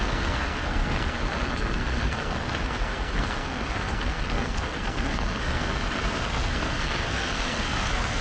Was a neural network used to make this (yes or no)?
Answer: yes